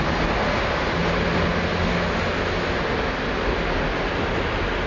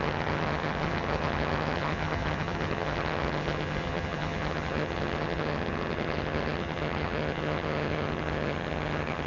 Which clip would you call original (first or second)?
first